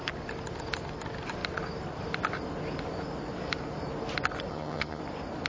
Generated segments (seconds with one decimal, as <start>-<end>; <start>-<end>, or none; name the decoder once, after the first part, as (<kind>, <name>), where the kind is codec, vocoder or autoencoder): 4.5-5.0 (vocoder, HiFi-GAN)